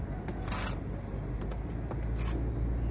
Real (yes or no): yes